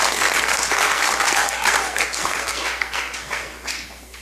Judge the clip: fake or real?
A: fake